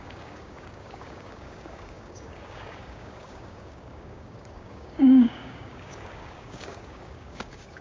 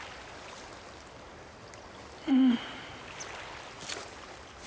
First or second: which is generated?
first